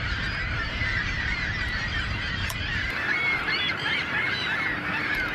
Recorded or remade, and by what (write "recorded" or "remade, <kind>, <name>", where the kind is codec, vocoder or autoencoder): remade, vocoder, BigVGAN v2